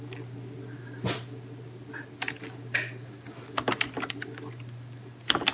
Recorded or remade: recorded